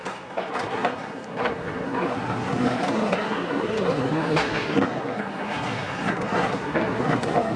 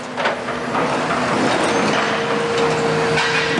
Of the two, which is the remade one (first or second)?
first